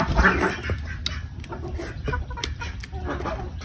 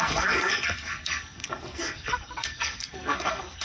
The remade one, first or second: second